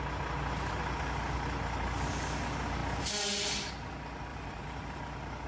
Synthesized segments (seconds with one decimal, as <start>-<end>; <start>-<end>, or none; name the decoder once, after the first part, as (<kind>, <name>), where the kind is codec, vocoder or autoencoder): 4.3-5.0 (vocoder, BigVGAN v2)